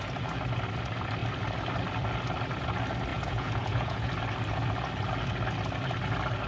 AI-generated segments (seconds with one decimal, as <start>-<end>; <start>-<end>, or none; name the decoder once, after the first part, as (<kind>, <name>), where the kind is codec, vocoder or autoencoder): 3.1-4.1 (vocoder, Vocos)